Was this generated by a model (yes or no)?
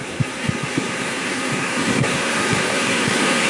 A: yes